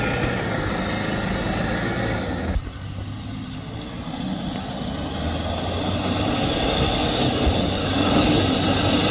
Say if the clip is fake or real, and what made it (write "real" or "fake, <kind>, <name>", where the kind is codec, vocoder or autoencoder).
real